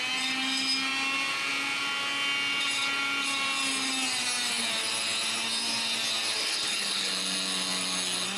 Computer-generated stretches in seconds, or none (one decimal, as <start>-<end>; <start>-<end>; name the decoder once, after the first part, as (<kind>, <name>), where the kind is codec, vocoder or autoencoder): 6.4-7.1 (codec, HILCodec)